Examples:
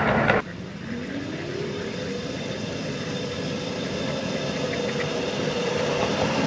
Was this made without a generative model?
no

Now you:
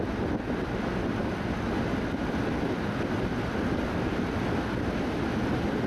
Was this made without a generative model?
yes